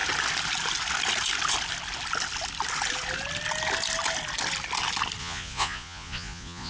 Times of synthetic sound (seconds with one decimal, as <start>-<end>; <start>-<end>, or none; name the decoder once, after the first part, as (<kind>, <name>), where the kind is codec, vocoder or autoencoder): 5.2-6.7 (vocoder, Vocos)